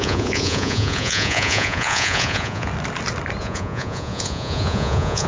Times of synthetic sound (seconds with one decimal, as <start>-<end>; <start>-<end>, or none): 0.0-2.7; 3.4-5.3